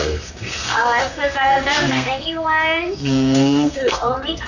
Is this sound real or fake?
fake